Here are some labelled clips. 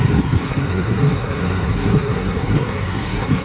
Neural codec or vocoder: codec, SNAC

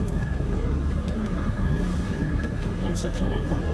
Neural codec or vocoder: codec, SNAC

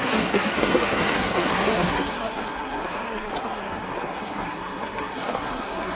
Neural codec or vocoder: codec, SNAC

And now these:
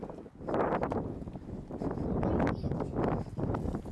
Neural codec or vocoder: none